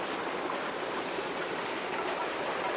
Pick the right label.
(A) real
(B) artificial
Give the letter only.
A